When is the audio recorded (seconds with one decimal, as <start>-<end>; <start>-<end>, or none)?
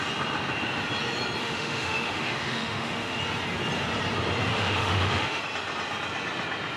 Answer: 0.0-1.4; 3.2-4.5; 5.4-6.8